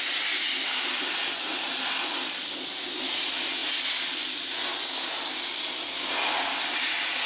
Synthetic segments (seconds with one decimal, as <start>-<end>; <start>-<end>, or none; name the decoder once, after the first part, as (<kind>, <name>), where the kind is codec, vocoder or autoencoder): none